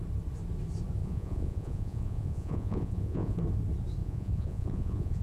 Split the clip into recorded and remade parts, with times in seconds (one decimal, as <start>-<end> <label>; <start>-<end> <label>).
0.0-1.0 recorded; 1.0-3.4 remade; 3.4-4.0 recorded; 4.0-5.2 remade